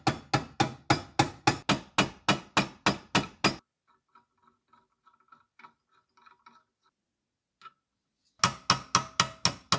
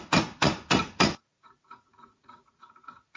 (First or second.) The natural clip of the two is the first